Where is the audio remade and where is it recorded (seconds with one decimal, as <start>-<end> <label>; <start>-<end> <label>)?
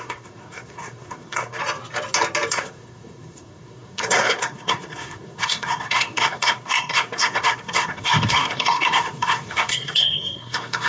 0.0-1.6 remade; 1.6-2.5 recorded; 2.5-10.9 remade